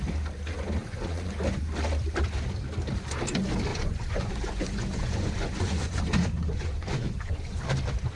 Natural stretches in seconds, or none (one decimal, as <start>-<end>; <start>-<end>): 0.0-0.8; 1.4-3.7; 7.6-8.2